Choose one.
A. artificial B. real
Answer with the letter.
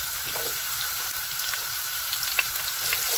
A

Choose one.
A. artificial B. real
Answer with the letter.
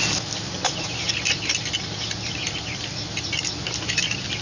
B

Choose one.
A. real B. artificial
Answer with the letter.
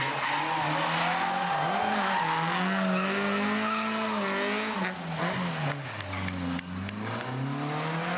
A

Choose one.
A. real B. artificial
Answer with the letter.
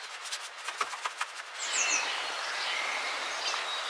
A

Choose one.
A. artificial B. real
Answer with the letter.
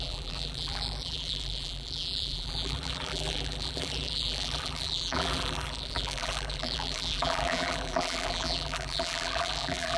A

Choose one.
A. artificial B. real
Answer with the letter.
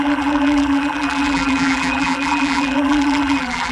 A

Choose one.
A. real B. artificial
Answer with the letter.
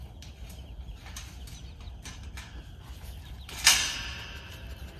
A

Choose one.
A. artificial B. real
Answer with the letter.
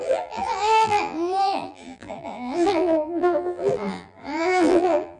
A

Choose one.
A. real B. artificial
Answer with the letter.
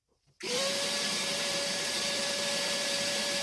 B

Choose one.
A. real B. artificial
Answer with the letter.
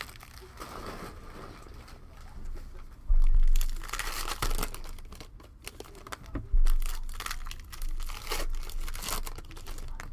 A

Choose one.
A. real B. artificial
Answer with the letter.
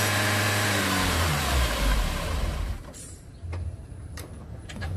B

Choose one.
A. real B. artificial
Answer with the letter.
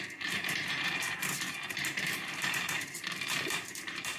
B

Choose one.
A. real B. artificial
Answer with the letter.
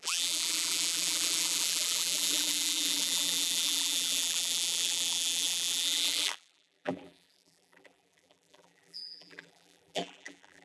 B